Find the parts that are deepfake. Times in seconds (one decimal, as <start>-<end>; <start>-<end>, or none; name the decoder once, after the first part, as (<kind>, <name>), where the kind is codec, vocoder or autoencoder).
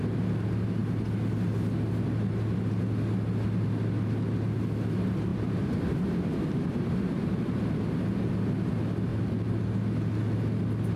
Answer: 5.3-7.8 (vocoder, BigVGAN v2); 9.1-9.6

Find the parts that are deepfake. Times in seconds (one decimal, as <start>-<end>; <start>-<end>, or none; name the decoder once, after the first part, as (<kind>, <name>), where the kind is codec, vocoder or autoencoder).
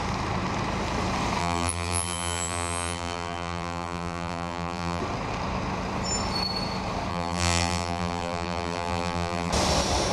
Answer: 1.4-5.0 (vocoder, BigVGAN v2); 7.1-9.5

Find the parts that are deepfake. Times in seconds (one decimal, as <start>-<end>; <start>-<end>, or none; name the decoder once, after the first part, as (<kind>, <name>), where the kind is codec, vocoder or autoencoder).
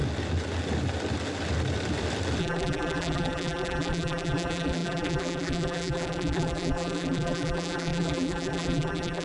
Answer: 2.4-9.2 (vocoder, BigVGAN v2)